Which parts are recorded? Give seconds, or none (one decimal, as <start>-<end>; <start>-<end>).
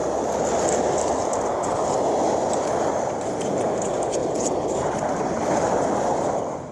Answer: 0.0-4.2